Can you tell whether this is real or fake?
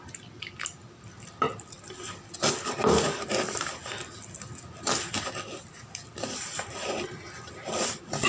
real